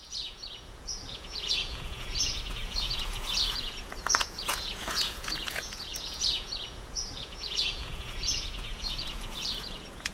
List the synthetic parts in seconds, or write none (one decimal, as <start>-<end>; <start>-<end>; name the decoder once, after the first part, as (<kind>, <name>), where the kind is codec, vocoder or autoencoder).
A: 0.0-10.1 (vocoder, Vocos)